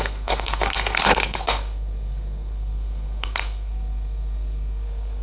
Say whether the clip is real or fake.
fake